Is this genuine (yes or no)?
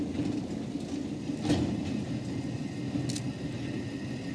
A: yes